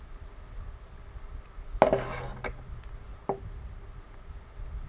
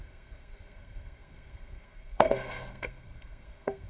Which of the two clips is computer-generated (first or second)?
second